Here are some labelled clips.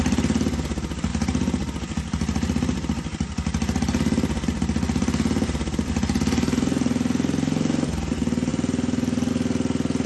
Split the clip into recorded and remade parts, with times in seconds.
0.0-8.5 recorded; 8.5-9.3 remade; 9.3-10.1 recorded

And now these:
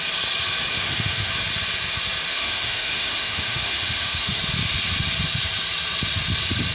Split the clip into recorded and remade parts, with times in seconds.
0.0-0.7 recorded; 0.7-1.3 remade; 1.3-2.3 recorded; 2.3-4.4 remade; 4.4-6.7 recorded

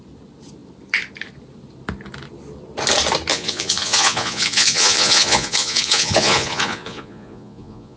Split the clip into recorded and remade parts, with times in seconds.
0.0-3.3 recorded; 3.3-8.0 remade

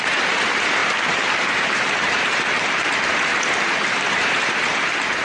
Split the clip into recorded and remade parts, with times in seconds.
0.0-3.3 remade; 3.3-4.1 recorded; 4.1-5.2 remade

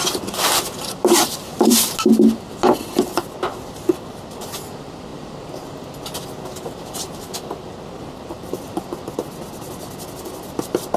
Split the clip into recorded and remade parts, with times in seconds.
0.0-11.0 recorded